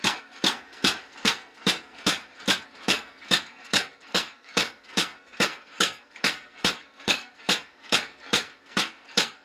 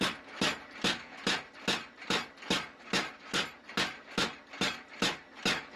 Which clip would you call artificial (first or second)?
first